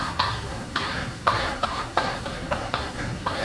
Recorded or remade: remade